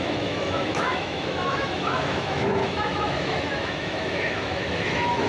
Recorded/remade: remade